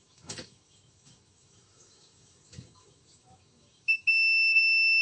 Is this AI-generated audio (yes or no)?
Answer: yes